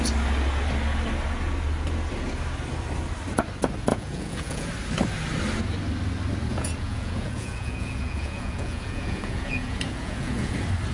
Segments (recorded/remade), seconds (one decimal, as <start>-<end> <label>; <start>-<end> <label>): 0.0-3.9 recorded; 3.9-4.7 remade; 4.7-6.5 recorded; 6.5-10.5 remade; 10.5-10.9 recorded